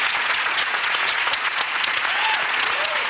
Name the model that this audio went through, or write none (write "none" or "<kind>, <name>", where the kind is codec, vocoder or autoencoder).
vocoder, Vocos